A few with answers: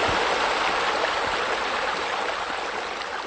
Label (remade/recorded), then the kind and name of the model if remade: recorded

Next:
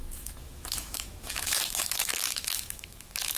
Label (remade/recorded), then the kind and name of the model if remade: remade, autoencoder, DAC-VAE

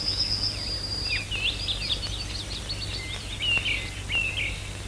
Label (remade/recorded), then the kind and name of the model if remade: recorded